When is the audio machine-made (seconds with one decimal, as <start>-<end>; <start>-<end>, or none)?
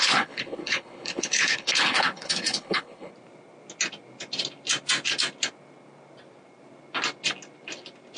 0.0-3.1